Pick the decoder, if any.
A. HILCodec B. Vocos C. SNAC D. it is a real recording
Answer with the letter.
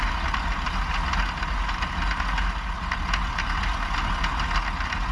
D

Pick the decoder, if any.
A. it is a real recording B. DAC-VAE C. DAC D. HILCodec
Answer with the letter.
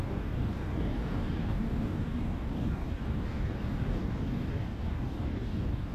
C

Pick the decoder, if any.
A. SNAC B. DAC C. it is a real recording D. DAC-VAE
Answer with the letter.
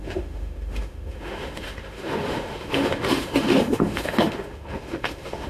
D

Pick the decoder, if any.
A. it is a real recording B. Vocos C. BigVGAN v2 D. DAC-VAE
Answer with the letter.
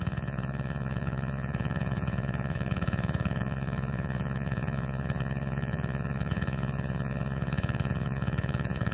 B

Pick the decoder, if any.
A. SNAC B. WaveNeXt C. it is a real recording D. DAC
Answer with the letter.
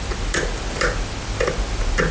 C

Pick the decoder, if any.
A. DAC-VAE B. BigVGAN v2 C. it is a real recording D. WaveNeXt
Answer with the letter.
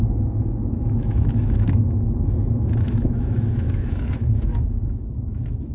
A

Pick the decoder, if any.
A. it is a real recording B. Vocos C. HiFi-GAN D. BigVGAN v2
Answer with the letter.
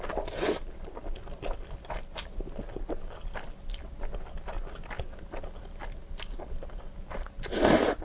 A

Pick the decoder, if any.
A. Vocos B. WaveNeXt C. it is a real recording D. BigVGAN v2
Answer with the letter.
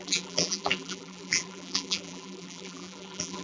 D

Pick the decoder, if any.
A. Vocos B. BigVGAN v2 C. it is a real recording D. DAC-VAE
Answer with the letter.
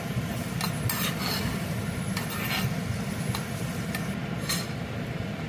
C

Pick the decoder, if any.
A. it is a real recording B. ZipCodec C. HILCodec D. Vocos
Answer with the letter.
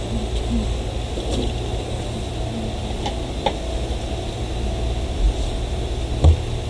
A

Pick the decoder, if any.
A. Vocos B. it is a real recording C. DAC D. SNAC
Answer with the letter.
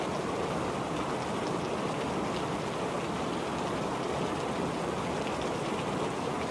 B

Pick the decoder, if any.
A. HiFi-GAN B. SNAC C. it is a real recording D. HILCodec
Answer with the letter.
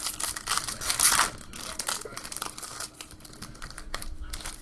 C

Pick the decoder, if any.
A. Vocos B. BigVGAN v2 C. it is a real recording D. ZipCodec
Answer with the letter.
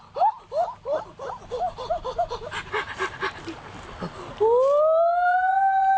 C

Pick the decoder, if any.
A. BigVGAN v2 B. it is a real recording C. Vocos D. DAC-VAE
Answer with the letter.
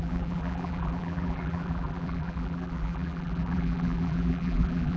A